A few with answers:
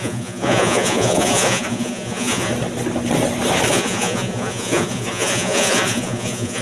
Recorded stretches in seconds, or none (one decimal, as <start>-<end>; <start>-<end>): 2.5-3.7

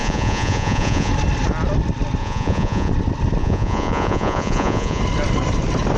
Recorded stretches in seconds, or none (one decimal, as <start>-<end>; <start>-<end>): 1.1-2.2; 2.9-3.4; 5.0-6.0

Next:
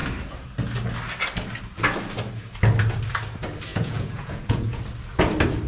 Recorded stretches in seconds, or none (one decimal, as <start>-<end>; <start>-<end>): 0.0-3.7; 4.8-5.7